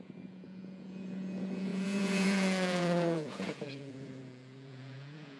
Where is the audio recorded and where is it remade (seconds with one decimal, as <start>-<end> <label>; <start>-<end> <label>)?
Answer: 0.0-5.4 remade